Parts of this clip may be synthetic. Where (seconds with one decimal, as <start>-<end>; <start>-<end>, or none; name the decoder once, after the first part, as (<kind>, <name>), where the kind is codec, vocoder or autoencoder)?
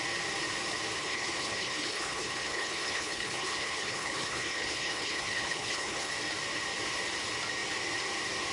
1.0-6.1 (codec, HILCodec)